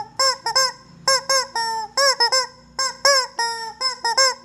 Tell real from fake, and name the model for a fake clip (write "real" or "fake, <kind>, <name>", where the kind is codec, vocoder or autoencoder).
real